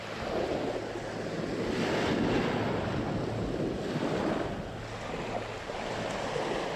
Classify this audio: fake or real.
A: real